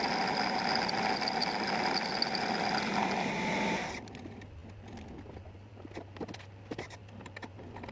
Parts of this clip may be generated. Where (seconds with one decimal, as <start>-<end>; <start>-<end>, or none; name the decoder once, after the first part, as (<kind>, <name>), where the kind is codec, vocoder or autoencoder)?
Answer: none